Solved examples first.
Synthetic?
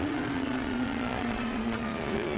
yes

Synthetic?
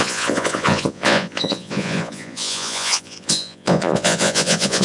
yes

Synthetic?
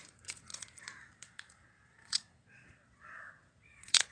yes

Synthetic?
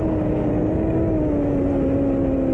no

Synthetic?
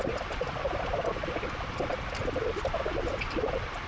no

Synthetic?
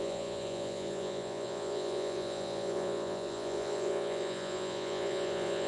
yes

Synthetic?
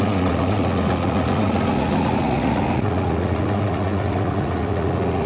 yes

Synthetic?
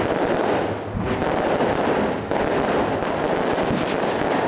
no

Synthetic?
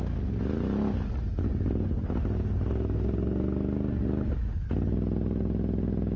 no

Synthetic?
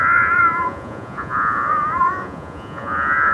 yes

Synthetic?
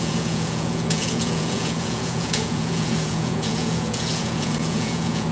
yes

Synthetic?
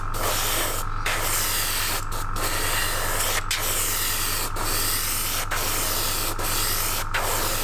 no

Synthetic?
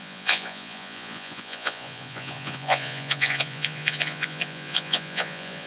yes